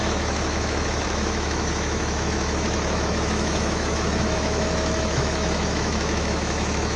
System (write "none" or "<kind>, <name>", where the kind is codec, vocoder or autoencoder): autoencoder, DAC-VAE